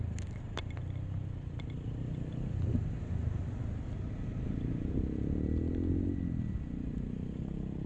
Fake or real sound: real